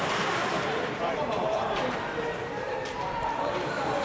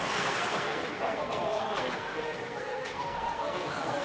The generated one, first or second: second